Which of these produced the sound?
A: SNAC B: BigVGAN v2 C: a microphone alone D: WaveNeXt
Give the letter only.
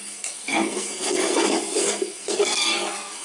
A